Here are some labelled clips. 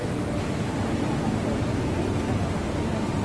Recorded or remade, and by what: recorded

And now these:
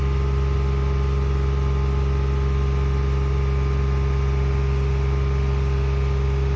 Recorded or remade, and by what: recorded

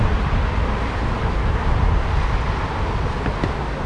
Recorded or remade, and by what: recorded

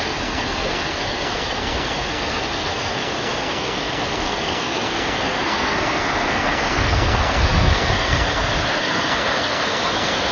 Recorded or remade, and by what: remade, codec, SNAC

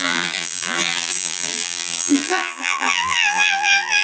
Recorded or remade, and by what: remade, vocoder, BigVGAN v2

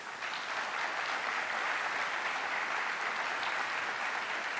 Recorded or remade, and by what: recorded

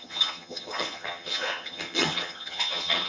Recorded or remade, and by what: remade, vocoder, HiFi-GAN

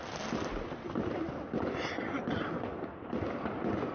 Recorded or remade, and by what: recorded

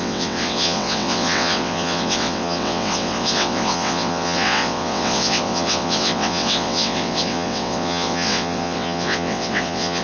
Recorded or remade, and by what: remade, vocoder, WaveNeXt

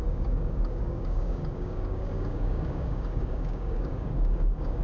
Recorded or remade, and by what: remade, codec, DAC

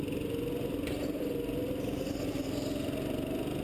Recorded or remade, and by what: recorded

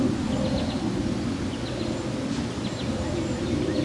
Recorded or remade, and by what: recorded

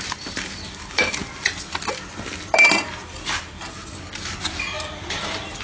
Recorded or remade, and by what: recorded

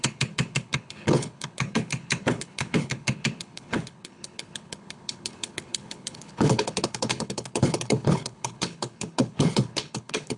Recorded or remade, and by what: remade, codec, HILCodec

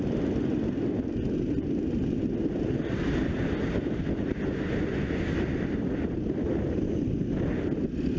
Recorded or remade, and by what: recorded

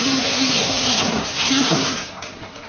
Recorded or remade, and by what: remade, codec, SNAC